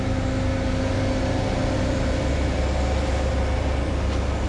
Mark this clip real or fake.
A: real